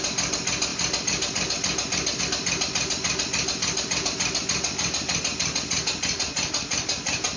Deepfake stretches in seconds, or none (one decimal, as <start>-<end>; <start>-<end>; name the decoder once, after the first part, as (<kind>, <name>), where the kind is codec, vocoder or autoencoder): none